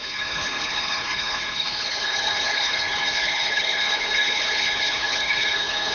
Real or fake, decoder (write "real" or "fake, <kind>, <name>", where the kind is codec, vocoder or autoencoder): fake, codec, HILCodec